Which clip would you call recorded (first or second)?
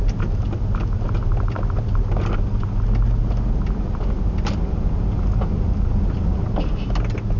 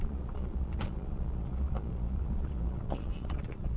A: first